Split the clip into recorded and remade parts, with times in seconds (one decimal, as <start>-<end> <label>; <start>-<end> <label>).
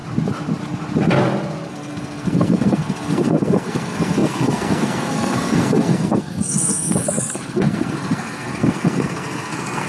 0.0-1.7 recorded; 1.7-9.9 remade